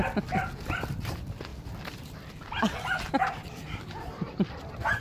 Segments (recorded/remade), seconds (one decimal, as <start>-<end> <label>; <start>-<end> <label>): 0.0-5.0 recorded

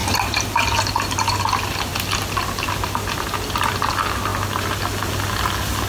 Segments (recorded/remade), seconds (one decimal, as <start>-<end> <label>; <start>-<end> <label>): 0.0-0.9 remade; 0.9-5.9 recorded

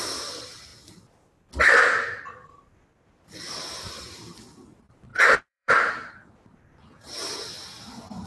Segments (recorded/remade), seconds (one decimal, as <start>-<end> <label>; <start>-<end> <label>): 0.0-5.1 recorded; 5.1-5.9 remade; 5.9-8.3 recorded

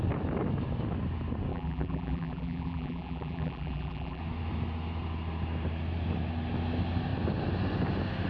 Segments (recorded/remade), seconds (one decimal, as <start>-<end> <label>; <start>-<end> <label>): 0.0-1.5 recorded; 1.5-4.2 remade; 4.2-8.3 recorded

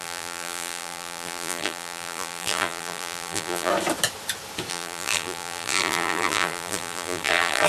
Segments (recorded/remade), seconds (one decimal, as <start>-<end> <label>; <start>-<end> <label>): 0.0-3.7 remade; 3.7-4.7 recorded; 4.7-7.7 remade